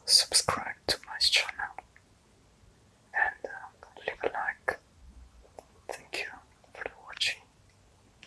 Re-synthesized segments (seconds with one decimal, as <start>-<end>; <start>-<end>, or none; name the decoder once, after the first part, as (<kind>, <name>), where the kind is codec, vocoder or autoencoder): 1.0-1.6 (vocoder, Vocos); 3.1-6.6